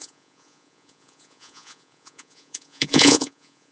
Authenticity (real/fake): fake